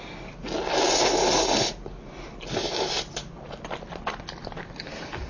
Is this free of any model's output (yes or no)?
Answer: yes